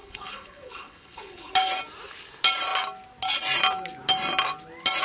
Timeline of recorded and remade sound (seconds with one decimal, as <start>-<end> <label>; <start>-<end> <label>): 0.0-1.5 remade; 1.5-5.0 recorded